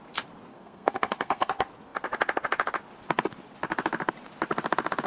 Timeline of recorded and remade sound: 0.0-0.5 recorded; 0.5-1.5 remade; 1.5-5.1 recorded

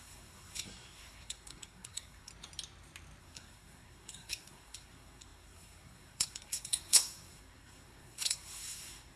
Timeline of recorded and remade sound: 0.0-2.3 remade; 2.3-3.2 recorded; 3.2-9.2 remade

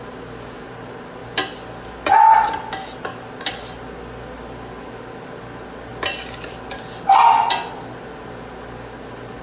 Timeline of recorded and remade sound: 0.0-9.4 recorded

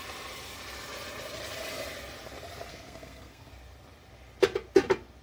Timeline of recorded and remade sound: 0.0-2.7 recorded; 2.7-3.5 remade; 3.5-5.2 recorded

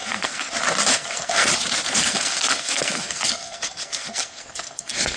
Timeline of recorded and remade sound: 0.0-0.5 remade; 0.5-0.9 recorded; 0.9-1.5 remade; 1.5-1.9 recorded; 1.9-5.2 remade